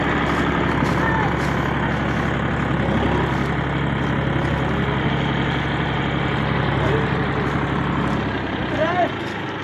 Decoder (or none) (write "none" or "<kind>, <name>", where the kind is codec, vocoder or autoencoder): none